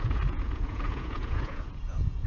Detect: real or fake fake